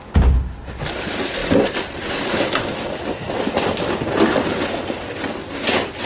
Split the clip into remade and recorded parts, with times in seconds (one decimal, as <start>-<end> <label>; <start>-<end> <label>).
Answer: 0.0-6.1 recorded